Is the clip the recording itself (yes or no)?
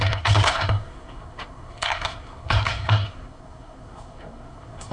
no